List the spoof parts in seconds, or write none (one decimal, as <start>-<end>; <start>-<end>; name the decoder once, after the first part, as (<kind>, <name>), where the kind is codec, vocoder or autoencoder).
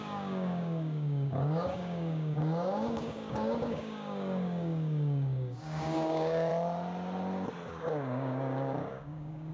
0.0-6.5 (codec, DAC); 7.7-9.5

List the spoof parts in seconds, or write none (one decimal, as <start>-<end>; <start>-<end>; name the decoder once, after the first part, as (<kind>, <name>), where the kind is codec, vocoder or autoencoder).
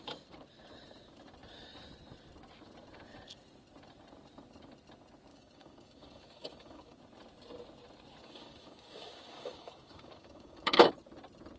5.3-7.0 (codec, DAC); 8.2-10.9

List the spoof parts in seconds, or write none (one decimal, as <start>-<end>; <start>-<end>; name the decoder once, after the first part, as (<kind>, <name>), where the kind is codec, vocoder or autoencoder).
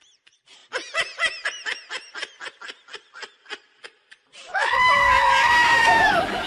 4.5-6.5 (codec, DAC)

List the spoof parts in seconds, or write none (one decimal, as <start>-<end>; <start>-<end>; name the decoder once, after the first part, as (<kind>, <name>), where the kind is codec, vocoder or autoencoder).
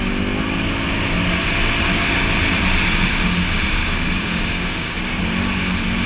3.8-5.2 (codec, DAC)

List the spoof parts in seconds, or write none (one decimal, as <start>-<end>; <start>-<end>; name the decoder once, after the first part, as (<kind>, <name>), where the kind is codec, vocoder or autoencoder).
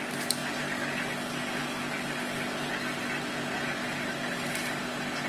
none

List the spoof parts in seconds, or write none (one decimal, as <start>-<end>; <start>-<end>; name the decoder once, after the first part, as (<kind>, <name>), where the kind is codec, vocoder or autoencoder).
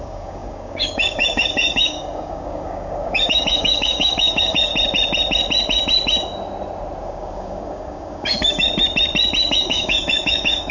0.0-4.7 (codec, DAC); 7.0-8.7; 9.5-10.7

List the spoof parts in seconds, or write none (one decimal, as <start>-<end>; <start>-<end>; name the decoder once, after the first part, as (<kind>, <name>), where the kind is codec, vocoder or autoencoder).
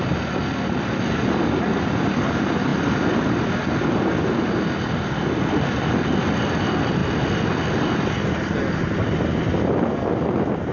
none